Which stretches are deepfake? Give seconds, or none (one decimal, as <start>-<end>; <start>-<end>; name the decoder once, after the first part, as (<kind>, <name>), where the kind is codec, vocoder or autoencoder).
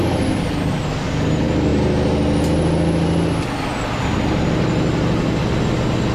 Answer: none